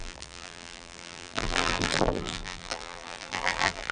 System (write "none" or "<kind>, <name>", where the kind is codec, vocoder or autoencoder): vocoder, BigVGAN v2